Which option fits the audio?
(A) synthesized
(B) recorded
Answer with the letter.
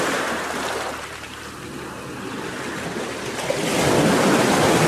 B